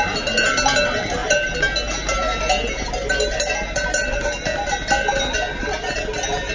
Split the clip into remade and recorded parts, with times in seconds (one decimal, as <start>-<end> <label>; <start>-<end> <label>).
0.0-6.5 recorded